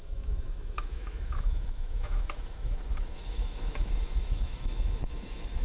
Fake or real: fake